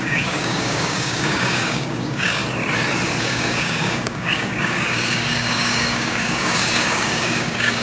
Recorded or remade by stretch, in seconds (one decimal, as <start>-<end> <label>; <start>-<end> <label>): 0.0-2.4 remade; 2.4-3.2 recorded; 3.2-7.8 remade

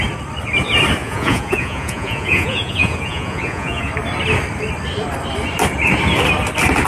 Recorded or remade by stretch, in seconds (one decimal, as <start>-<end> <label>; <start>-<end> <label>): 0.0-1.0 recorded; 1.0-3.9 remade; 3.9-6.9 recorded

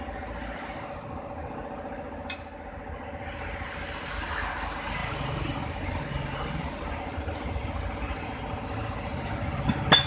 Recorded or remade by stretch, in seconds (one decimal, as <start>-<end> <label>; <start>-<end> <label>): 0.0-5.0 recorded; 5.0-6.0 remade; 6.0-10.1 recorded

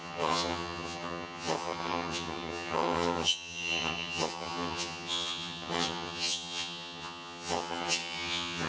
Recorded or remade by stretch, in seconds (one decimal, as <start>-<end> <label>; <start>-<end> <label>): 0.0-8.7 remade